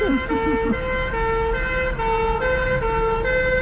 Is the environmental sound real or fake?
real